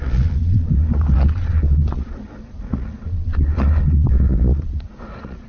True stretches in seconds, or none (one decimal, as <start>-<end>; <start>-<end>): none